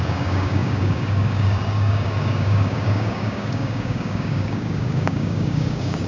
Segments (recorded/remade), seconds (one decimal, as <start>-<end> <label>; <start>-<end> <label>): 0.0-6.1 remade

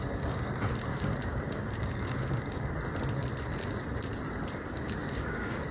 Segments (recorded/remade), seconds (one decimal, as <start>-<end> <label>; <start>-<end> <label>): 0.0-0.5 remade; 0.5-0.9 recorded; 0.9-2.7 remade; 2.7-4.7 recorded; 4.7-5.7 remade

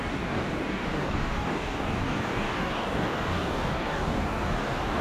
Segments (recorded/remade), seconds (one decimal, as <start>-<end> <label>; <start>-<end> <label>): 0.0-5.0 remade

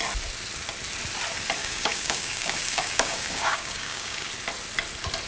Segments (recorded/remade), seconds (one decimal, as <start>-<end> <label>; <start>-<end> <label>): 0.0-1.6 recorded; 1.6-4.3 remade; 4.3-5.3 recorded